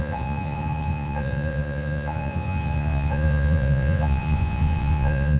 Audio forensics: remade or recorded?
remade